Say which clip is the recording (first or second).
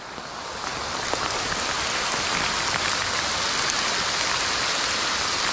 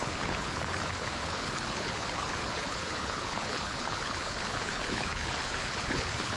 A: first